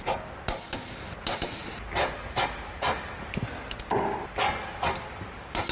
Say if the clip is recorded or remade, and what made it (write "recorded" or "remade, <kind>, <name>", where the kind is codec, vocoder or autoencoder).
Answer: recorded